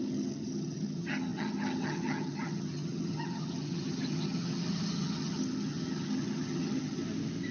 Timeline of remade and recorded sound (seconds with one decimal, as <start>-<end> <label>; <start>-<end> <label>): 0.0-7.0 remade; 7.0-7.5 recorded